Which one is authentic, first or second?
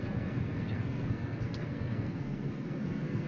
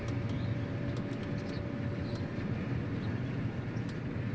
second